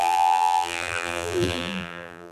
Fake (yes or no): yes